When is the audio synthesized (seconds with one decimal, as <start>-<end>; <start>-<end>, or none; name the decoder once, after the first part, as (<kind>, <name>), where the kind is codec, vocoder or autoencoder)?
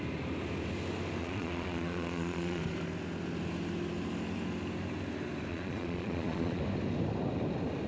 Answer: 1.2-2.6 (vocoder, Vocos); 5.5-6.6